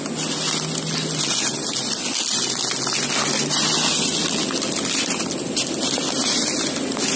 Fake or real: real